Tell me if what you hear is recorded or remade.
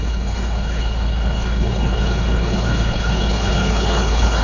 remade